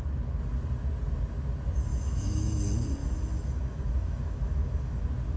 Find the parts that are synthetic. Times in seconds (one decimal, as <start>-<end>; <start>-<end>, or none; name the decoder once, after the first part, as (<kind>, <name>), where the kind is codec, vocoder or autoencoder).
1.9-2.6 (autoencoder, DAC-VAE); 3.0-5.0